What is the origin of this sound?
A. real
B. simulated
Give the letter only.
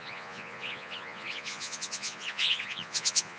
B